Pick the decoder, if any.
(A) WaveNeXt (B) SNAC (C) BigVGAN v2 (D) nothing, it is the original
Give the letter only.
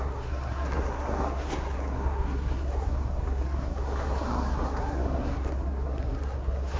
B